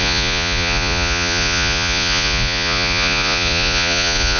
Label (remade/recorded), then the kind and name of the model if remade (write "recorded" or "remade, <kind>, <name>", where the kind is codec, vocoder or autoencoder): remade, vocoder, Vocos